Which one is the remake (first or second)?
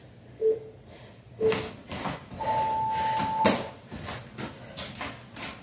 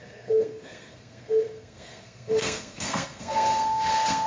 second